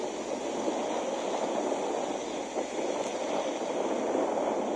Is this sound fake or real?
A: real